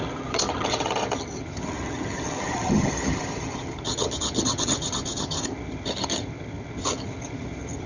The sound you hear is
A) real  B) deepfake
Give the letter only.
B